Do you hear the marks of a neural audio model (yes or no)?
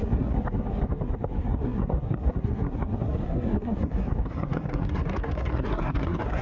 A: yes